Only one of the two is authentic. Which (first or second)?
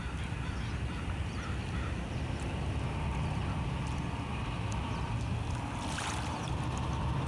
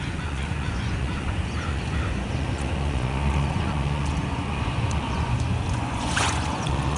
first